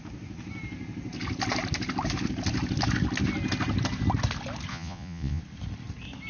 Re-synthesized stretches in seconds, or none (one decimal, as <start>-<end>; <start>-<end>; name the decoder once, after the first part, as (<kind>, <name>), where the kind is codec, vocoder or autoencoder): 4.7-5.4 (vocoder, Vocos)